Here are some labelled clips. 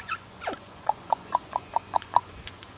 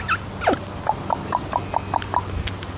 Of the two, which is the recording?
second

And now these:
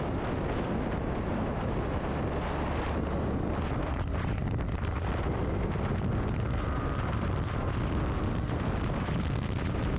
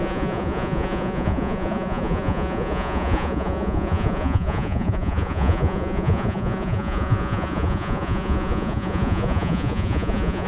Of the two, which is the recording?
first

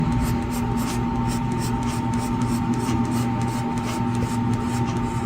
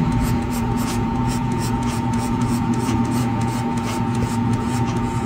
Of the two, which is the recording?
first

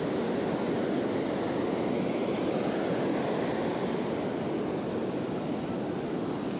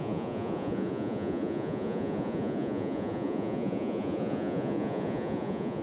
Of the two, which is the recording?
first